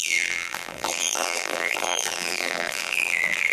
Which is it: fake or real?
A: fake